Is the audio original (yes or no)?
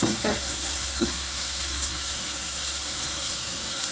no